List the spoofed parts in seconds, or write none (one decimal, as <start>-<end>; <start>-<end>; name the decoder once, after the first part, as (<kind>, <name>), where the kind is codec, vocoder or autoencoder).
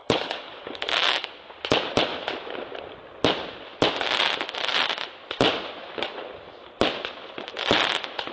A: 0.0-1.3 (codec, DAC)